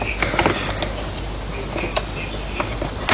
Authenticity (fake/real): real